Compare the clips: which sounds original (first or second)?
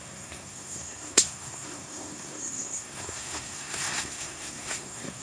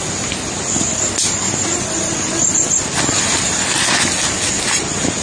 second